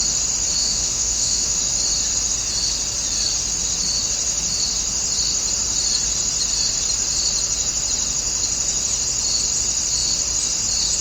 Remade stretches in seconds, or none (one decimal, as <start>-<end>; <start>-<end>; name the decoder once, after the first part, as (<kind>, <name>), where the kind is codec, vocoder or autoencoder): 0.6-1.6 (autoencoder, DAC-VAE)